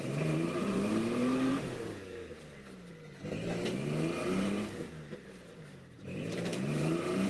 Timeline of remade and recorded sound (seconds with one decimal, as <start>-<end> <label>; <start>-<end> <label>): 0.0-1.5 remade; 1.5-5.6 recorded; 5.6-7.3 remade